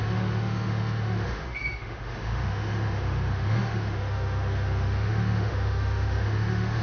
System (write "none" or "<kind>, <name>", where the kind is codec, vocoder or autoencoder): autoencoder, DAC-VAE